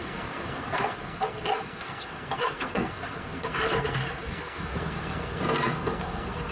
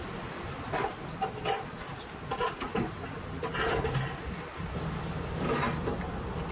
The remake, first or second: first